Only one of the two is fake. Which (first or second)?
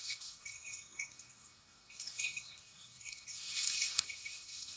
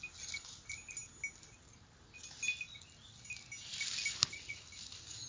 first